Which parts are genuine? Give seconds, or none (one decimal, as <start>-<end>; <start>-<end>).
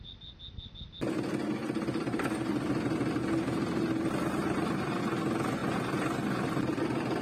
0.0-1.6; 2.7-3.2; 5.0-5.6; 6.8-7.2